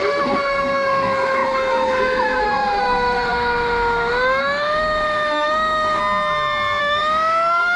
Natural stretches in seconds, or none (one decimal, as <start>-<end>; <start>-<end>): 6.0-6.8